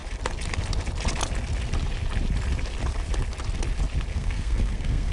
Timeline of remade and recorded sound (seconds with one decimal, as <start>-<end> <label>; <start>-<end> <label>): 0.0-4.1 recorded; 4.1-5.1 remade